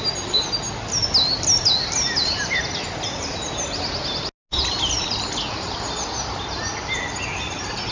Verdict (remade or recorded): recorded